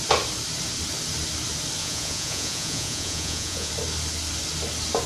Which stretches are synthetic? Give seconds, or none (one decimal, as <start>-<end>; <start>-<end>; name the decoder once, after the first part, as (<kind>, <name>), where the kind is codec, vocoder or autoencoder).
1.8-3.7 (vocoder, Vocos)